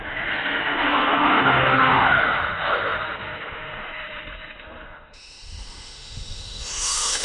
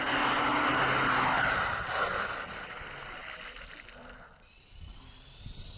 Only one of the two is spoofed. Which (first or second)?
first